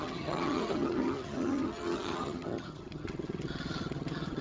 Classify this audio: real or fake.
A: fake